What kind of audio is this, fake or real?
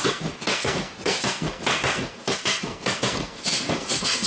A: fake